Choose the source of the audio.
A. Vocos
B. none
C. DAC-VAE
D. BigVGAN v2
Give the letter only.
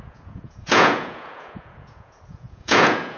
A